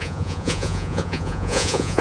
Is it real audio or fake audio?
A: fake